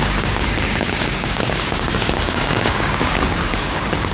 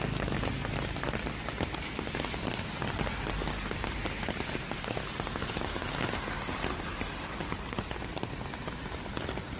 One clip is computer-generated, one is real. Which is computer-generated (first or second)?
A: first